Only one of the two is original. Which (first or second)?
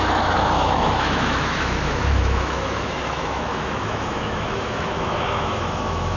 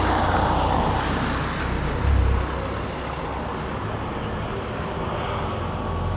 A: second